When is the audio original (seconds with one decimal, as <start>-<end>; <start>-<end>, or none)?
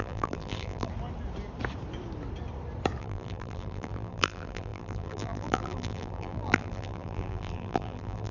0.9-3.0